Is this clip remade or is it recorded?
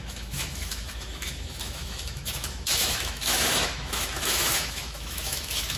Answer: remade